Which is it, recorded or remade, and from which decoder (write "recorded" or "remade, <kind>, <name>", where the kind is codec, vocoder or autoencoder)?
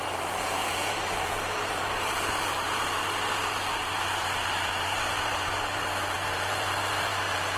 remade, vocoder, BigVGAN v2